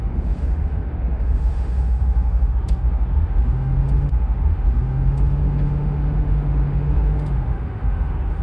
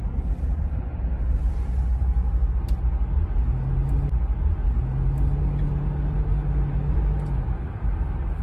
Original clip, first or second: second